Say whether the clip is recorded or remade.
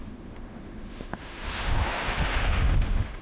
remade